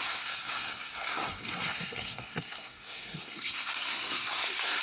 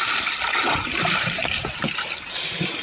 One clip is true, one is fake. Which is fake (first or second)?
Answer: first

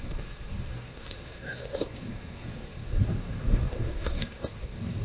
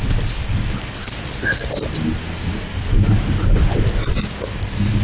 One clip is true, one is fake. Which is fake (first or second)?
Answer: first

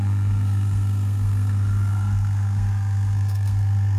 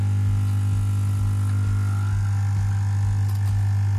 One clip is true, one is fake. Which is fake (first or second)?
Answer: first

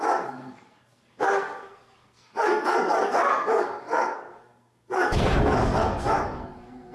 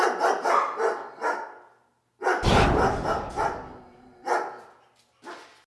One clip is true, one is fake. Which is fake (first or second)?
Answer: first